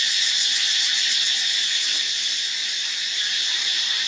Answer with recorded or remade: remade